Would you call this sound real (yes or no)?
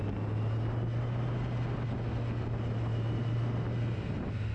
yes